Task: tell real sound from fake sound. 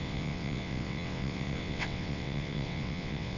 fake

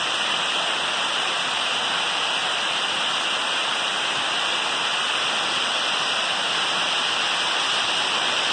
real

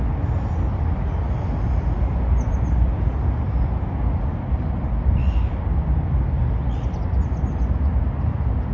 real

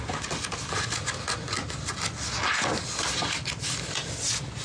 real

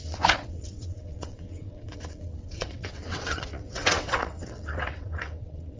fake